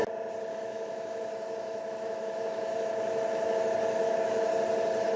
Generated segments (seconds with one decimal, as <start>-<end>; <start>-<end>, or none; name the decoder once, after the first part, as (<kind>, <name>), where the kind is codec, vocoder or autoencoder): 0.5-3.6 (autoencoder, DAC-VAE); 4.0-4.5